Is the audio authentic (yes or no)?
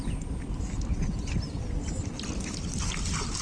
yes